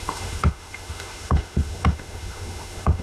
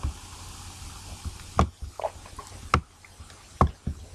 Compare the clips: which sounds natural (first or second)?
second